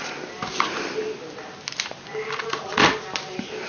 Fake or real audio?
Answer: real